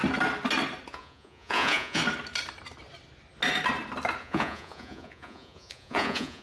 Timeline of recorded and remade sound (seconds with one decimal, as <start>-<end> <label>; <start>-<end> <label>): 0.0-0.9 recorded; 0.9-2.0 remade; 2.0-4.2 recorded; 4.2-6.4 remade